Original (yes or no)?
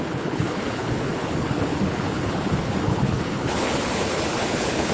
no